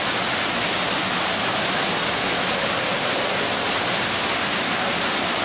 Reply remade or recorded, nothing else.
recorded